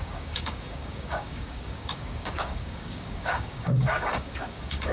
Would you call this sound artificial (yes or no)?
yes